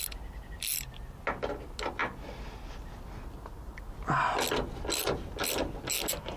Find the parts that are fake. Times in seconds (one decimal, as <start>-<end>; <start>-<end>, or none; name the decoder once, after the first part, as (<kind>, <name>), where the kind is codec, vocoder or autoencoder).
none